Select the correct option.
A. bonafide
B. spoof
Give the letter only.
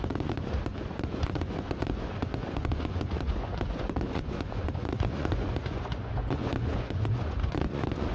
B